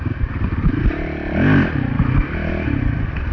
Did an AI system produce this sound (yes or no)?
no